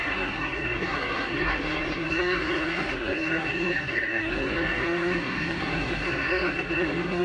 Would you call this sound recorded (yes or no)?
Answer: no